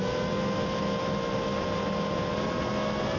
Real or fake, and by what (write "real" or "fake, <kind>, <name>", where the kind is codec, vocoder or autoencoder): real